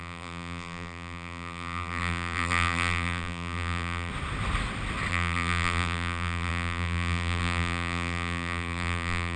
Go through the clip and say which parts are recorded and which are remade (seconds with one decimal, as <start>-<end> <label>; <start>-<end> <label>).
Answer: 0.0-4.1 remade; 4.1-5.1 recorded; 5.1-9.4 remade